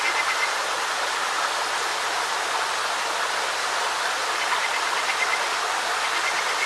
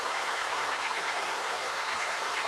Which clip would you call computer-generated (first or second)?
second